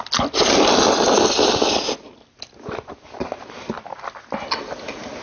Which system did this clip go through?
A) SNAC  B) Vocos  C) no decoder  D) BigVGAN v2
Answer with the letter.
C